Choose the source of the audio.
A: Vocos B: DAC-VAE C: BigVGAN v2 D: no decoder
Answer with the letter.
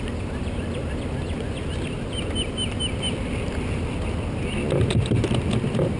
D